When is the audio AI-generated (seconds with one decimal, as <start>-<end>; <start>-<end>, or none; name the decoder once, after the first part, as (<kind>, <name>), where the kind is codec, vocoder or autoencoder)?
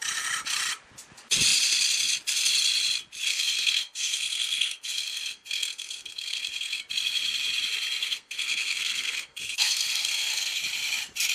3.3-6.8 (codec, SNAC); 8.0-10.6